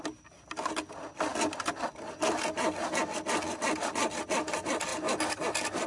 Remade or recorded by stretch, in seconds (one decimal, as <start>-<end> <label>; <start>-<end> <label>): 0.0-5.9 recorded